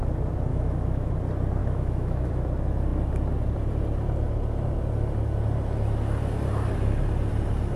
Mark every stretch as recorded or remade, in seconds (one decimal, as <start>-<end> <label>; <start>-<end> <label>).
0.0-0.5 recorded; 0.5-1.1 remade; 1.1-1.6 recorded; 1.6-2.3 remade; 2.3-7.8 recorded